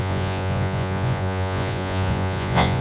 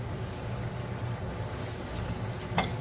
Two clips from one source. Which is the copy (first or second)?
first